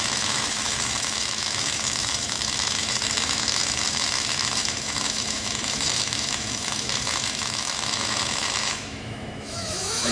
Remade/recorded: remade